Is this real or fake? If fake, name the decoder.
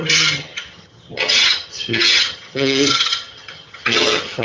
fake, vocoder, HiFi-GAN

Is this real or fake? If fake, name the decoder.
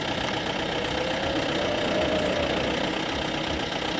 real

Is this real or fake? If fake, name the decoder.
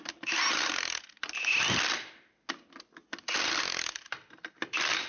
real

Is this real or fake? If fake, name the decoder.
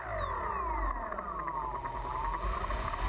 real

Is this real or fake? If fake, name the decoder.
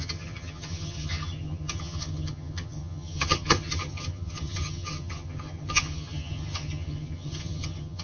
fake, vocoder, HiFi-GAN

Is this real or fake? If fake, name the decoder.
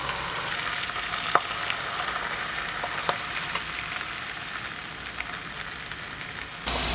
real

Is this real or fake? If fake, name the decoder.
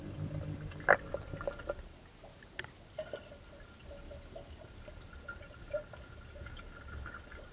real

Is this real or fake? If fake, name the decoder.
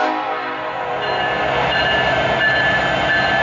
real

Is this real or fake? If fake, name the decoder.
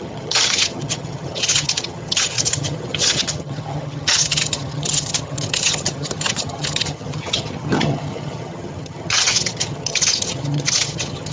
fake, vocoder, HiFi-GAN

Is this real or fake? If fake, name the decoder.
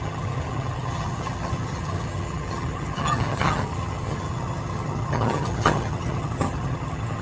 fake, vocoder, HiFi-GAN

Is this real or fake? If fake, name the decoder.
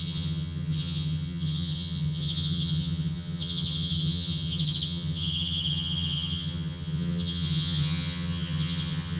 fake, vocoder, HiFi-GAN